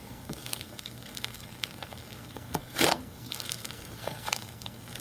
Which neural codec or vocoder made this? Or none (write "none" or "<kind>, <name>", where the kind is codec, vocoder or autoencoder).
codec, SNAC